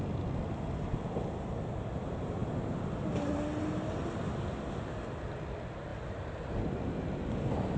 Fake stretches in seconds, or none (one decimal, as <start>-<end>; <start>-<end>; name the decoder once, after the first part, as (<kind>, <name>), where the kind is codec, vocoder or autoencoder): none